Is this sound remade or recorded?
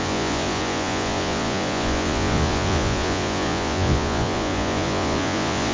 remade